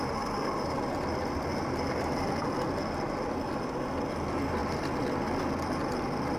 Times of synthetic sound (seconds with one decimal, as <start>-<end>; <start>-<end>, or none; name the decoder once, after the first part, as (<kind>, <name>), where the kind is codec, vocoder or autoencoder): none

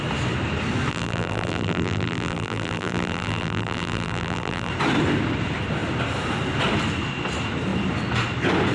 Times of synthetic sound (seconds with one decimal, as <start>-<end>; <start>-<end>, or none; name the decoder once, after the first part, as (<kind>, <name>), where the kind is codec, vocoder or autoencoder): 0.9-4.7 (vocoder, BigVGAN v2)